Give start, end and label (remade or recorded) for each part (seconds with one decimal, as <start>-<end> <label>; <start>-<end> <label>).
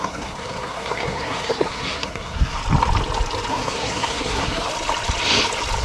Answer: 0.0-2.6 remade; 2.6-3.5 recorded; 3.5-4.7 remade; 4.7-5.8 recorded